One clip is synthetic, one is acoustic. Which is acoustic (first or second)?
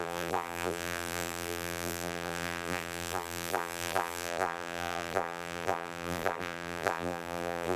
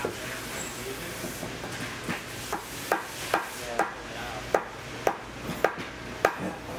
second